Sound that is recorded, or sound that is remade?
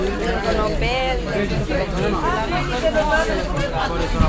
recorded